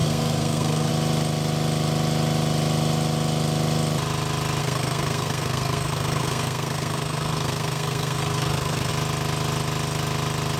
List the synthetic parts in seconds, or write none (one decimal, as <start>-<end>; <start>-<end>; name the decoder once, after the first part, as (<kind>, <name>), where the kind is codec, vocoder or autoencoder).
0.0-0.9 (codec, SNAC); 4.6-8.9